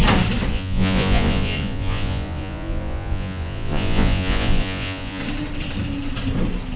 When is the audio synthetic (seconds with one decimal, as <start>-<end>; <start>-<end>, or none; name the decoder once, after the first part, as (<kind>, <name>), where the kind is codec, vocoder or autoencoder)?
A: 0.5-5.2 (vocoder, Vocos)